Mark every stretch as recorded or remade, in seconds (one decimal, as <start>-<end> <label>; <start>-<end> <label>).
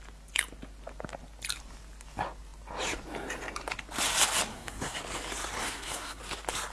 0.0-4.5 recorded; 4.5-5.0 remade; 5.0-5.6 recorded; 5.6-6.2 remade; 6.2-6.7 recorded